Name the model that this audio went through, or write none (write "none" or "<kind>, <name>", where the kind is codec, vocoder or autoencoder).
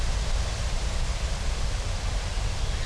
none